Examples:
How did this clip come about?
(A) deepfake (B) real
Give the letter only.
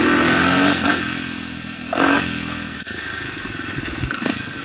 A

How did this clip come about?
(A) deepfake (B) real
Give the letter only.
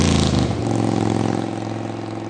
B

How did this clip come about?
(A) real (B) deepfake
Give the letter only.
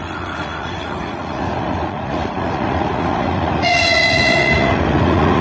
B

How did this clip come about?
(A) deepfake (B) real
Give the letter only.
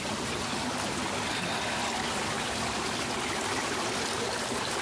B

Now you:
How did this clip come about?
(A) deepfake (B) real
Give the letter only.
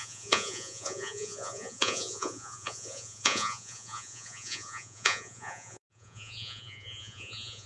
A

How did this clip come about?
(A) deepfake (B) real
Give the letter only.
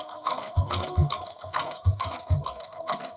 A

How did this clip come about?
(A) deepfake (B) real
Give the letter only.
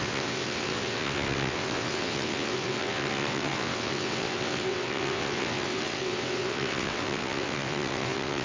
A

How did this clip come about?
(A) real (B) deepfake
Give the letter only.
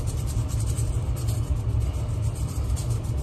A